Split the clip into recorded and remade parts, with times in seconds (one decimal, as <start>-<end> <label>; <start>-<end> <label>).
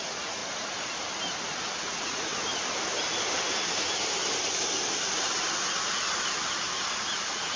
0.0-0.4 remade; 0.4-1.8 recorded; 1.8-2.3 remade; 2.3-6.9 recorded; 6.9-7.6 remade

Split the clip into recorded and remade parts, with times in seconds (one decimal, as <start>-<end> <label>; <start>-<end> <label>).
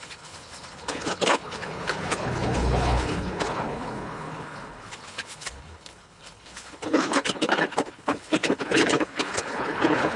0.0-10.2 remade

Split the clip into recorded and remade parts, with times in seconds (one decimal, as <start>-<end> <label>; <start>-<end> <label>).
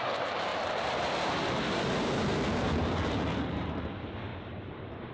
0.0-5.1 remade